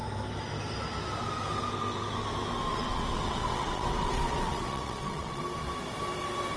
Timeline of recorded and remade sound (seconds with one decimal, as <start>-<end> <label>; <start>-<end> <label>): 0.0-2.7 recorded; 2.7-5.4 remade; 5.4-6.6 recorded